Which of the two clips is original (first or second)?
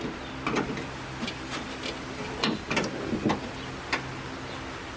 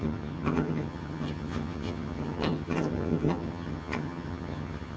first